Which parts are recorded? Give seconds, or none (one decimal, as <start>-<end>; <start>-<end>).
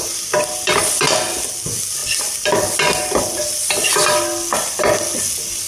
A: 0.0-5.7